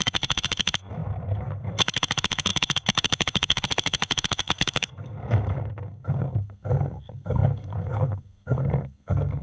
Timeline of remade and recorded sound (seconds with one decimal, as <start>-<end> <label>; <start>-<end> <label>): 0.0-9.4 remade